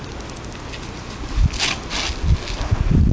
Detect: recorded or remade recorded